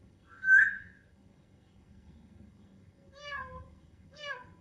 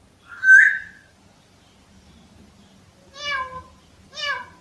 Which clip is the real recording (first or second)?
second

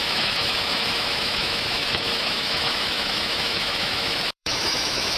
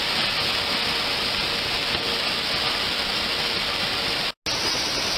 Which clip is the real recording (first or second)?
second